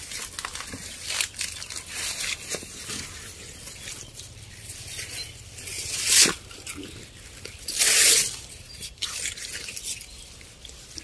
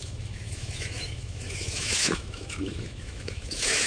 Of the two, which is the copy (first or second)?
second